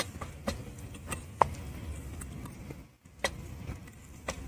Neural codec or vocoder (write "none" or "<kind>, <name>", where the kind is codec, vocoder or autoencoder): none